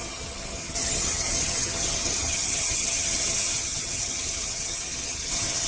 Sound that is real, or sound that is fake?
fake